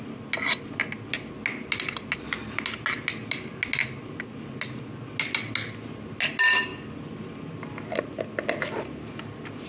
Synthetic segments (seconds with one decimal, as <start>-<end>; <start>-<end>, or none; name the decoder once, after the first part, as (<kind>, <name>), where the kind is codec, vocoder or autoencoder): none